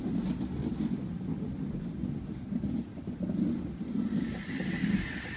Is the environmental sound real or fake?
real